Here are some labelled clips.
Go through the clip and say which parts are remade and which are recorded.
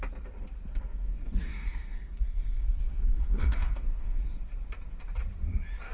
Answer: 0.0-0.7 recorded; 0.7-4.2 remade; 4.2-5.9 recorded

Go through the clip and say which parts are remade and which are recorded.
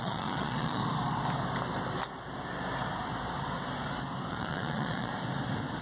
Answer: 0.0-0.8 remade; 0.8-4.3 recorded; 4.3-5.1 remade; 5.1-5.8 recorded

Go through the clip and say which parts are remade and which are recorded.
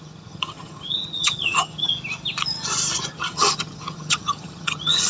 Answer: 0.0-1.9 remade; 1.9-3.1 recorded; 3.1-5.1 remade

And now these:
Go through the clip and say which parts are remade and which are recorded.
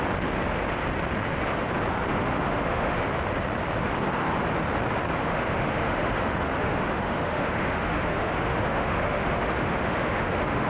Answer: 0.0-2.1 recorded; 2.1-3.0 remade; 3.0-5.2 recorded; 5.2-10.7 remade